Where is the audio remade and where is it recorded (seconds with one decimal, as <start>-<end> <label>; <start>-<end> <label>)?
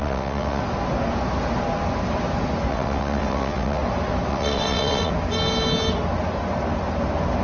0.0-0.6 remade; 0.6-2.7 recorded; 2.7-3.8 remade; 3.8-4.3 recorded; 4.3-5.1 remade; 5.1-7.4 recorded